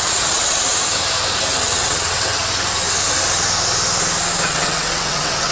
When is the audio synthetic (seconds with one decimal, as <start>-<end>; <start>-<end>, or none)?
0.0-0.7; 1.4-2.4; 4.5-5.5